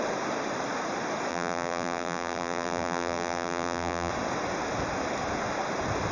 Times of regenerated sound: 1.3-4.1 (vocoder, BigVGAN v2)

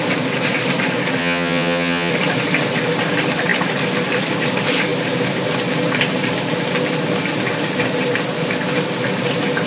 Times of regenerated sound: 1.2-2.1 (vocoder, HiFi-GAN)

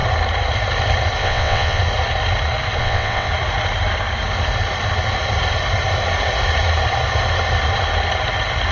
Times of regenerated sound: 1.2-1.8 (vocoder, WaveNeXt); 2.8-3.3